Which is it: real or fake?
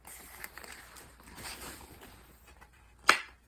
fake